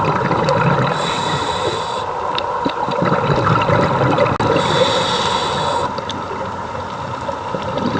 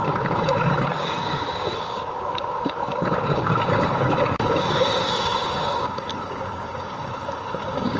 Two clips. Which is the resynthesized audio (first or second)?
second